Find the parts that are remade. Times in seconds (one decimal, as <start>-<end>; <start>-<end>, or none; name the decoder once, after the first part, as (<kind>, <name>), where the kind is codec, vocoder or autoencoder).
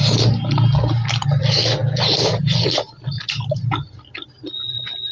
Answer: 1.8-2.4 (vocoder, BigVGAN v2)